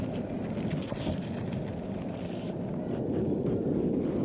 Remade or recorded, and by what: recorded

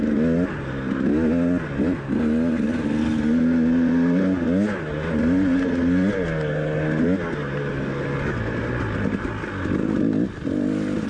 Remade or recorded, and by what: recorded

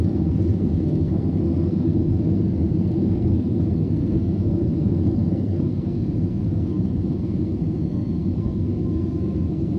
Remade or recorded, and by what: remade, codec, SNAC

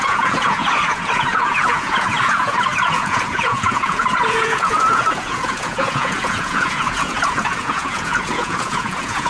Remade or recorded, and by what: remade, vocoder, Vocos